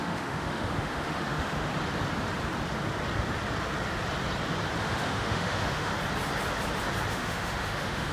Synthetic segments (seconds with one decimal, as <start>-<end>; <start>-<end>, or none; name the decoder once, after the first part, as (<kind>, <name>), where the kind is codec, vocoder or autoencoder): 0.0-1.7 (autoencoder, DAC-VAE); 4.8-5.9; 7.1-8.1